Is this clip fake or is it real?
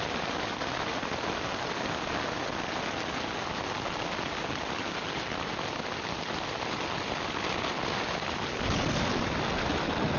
real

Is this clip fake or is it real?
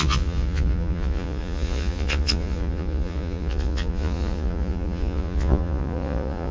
fake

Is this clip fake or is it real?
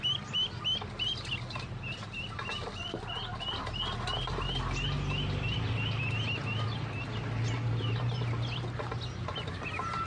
real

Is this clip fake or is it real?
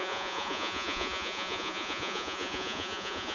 fake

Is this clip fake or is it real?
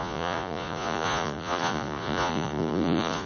fake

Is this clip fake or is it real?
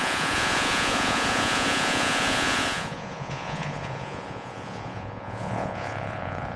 fake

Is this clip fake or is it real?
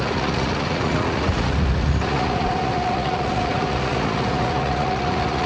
fake